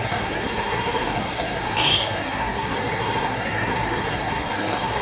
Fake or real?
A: fake